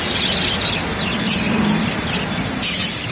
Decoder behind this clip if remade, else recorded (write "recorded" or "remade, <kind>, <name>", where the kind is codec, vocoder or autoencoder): recorded